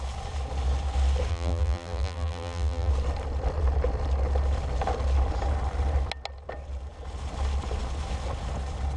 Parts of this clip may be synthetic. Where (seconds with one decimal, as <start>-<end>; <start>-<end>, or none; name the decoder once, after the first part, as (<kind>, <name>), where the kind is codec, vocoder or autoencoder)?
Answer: 1.3-2.9 (vocoder, BigVGAN v2)